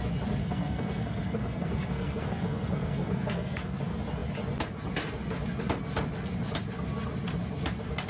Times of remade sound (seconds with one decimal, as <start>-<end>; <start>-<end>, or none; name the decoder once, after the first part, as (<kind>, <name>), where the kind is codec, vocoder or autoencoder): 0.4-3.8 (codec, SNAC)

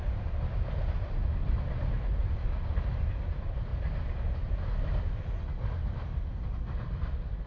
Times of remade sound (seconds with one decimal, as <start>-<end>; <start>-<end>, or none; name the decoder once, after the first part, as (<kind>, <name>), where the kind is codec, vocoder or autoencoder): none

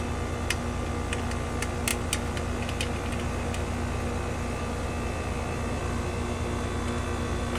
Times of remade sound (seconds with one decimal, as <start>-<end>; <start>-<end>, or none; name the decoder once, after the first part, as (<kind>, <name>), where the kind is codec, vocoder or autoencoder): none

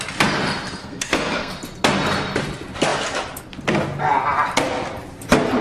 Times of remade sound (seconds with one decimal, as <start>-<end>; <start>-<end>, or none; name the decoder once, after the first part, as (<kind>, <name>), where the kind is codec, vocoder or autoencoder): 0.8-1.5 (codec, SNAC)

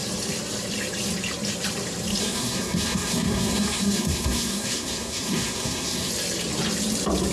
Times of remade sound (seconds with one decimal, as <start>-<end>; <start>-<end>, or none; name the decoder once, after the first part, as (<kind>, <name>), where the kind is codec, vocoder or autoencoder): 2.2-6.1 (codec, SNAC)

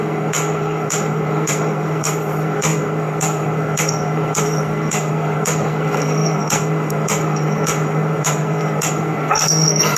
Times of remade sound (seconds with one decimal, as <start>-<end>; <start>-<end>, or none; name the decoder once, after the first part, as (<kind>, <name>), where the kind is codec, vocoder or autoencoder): 0.0-10.0 (codec, SNAC)

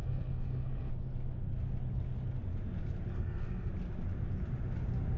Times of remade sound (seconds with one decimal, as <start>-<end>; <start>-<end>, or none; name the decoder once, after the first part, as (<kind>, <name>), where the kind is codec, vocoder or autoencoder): 0.0-0.9 (codec, SNAC); 3.1-3.7

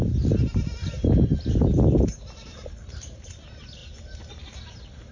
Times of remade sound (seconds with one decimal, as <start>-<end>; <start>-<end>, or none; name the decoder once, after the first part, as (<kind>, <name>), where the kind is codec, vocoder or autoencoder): none